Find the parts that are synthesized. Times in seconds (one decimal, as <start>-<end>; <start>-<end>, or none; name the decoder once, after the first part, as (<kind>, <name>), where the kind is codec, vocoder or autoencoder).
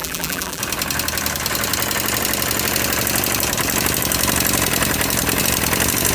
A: 0.0-0.6 (vocoder, BigVGAN v2)